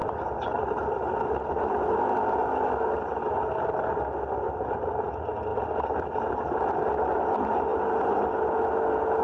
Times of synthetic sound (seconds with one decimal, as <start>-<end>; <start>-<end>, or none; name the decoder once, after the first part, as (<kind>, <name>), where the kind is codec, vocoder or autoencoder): none